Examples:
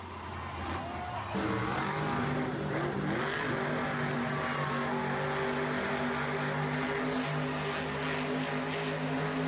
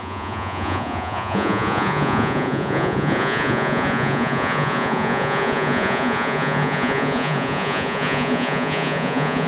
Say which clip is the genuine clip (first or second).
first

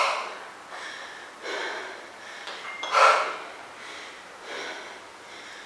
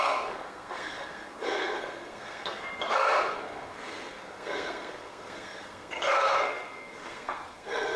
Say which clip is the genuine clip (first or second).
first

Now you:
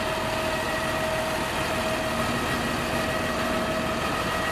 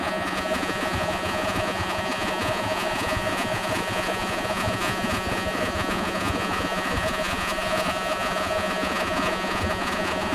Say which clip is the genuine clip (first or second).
first